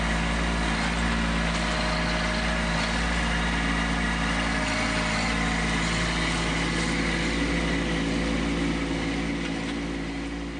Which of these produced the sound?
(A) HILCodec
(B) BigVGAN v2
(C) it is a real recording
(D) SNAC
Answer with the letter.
C